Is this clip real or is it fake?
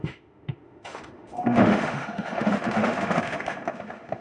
fake